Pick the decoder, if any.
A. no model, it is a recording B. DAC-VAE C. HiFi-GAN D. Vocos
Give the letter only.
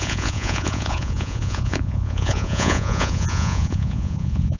D